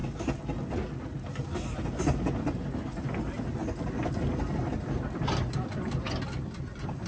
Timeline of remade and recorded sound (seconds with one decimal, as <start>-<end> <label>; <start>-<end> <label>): 0.0-7.1 recorded